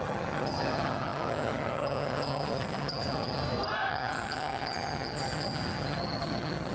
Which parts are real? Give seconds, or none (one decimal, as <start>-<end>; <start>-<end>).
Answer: 3.4-3.9